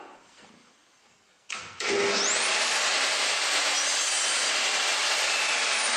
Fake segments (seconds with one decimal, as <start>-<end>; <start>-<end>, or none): 0.0-2.2